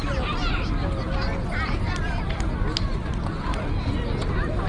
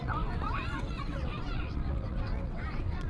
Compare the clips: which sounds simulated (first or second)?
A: second